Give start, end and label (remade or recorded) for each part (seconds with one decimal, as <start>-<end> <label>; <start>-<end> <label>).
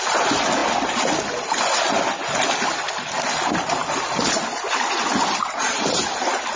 0.0-6.6 recorded